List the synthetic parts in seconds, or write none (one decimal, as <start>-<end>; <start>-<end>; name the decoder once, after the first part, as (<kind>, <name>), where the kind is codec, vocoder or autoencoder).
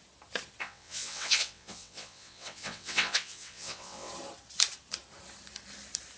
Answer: 0.6-4.1 (vocoder, WaveNeXt)